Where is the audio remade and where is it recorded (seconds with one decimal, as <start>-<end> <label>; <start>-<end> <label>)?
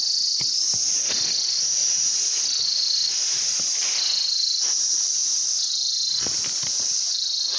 0.0-7.6 recorded